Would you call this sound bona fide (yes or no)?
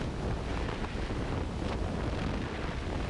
yes